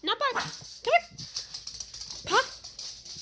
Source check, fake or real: real